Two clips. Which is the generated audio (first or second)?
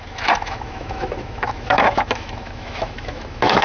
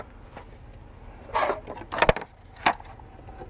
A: first